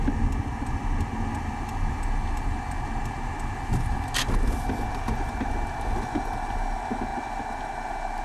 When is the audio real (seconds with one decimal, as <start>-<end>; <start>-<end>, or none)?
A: 0.0-8.2